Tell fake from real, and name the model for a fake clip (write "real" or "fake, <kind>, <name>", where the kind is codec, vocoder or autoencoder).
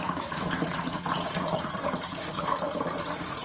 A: fake, vocoder, Vocos